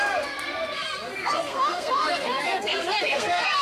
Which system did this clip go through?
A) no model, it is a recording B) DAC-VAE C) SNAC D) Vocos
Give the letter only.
C